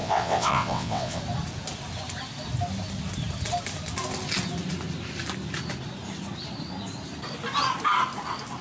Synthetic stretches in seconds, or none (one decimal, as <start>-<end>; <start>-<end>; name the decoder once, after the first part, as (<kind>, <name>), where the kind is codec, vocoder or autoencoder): 0.0-1.2 (vocoder, WaveNeXt)

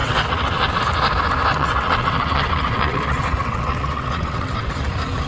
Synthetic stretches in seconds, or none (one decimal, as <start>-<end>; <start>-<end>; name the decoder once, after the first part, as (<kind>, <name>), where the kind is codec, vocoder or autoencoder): 0.0-0.8 (vocoder, WaveNeXt); 1.5-4.7

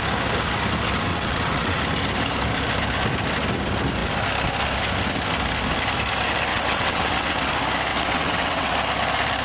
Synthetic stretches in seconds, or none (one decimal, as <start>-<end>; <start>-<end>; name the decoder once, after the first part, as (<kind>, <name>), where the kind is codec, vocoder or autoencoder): 1.1-1.8 (vocoder, WaveNeXt); 6.5-7.5; 7.9-8.7

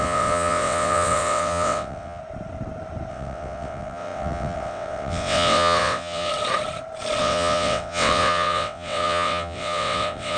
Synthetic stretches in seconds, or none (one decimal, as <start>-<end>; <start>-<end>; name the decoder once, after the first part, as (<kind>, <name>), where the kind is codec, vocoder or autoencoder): 0.0-2.2 (vocoder, WaveNeXt); 3.1-6.3; 7.2-10.4

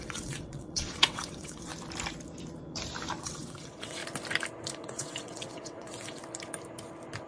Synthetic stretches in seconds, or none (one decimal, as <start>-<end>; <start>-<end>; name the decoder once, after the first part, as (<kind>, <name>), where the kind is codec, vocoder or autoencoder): 0.0-1.7 (vocoder, WaveNeXt); 3.2-4.0; 4.7-6.2

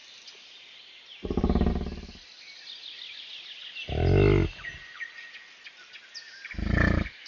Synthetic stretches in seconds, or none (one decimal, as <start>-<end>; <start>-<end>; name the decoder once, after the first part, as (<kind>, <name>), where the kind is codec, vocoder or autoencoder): none